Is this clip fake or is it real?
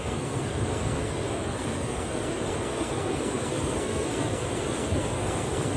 fake